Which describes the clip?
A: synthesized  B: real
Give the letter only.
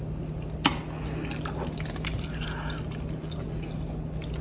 B